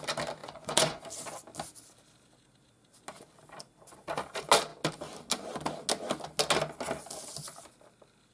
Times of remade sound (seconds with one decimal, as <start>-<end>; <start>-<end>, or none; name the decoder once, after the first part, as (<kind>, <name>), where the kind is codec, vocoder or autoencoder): 0.4-1.0 (vocoder, Vocos)